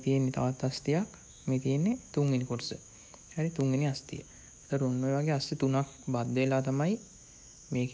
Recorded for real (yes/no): no